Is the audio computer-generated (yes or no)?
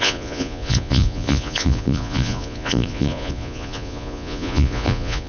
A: yes